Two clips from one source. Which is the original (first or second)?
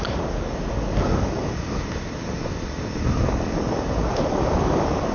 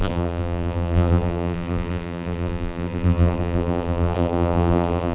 first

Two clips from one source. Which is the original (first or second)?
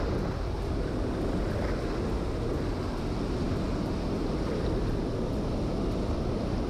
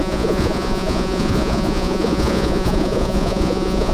first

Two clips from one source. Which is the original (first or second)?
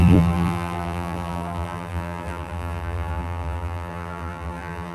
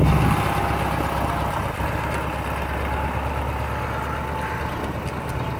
second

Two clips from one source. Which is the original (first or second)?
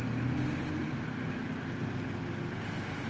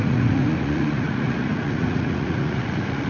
first